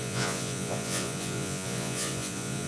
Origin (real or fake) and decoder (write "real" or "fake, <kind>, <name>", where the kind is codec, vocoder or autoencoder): fake, vocoder, Vocos